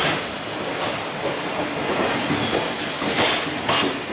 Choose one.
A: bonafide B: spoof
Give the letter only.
A